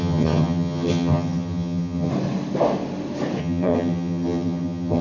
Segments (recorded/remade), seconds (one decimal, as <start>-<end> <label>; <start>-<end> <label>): 0.0-2.1 remade; 2.1-3.4 recorded; 3.4-5.0 remade